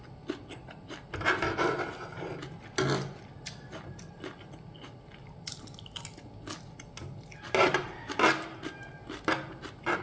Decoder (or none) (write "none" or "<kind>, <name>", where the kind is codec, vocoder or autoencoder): none